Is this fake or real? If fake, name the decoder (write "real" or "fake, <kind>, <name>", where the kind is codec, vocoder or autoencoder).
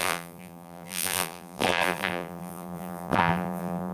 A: fake, vocoder, BigVGAN v2